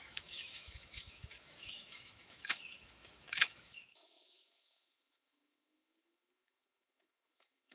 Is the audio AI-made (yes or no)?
yes